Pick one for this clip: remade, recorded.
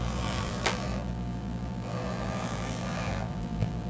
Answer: remade